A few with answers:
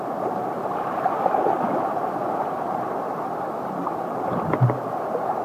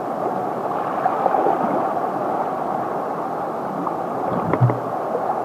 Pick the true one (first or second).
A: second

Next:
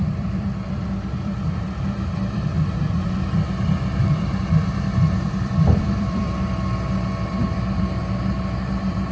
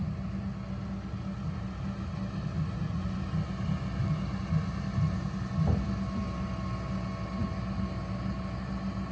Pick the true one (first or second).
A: second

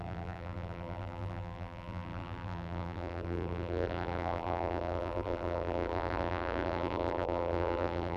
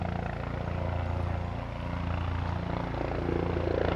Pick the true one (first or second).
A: second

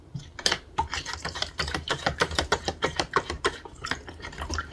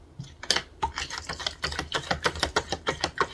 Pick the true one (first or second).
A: second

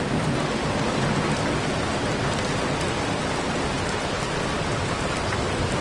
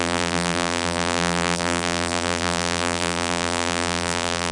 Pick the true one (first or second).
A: first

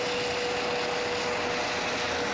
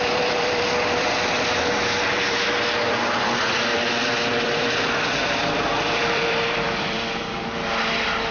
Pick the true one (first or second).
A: first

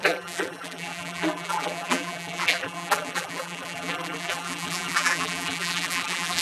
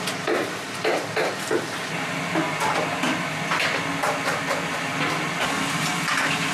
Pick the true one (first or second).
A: second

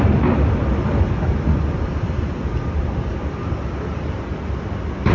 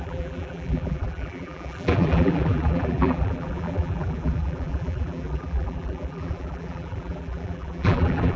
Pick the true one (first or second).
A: first